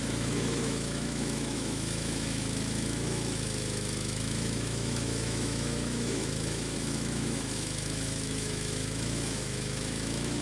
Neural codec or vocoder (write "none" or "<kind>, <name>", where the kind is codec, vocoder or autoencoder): autoencoder, DAC-VAE